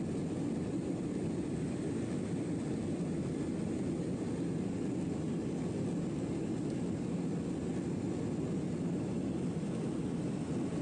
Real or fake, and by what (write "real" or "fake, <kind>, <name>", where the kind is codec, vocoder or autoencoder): real